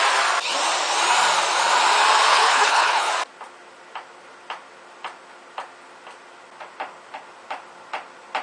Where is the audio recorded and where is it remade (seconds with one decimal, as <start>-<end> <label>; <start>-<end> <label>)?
0.0-2.3 recorded; 2.3-3.1 remade; 3.1-8.4 recorded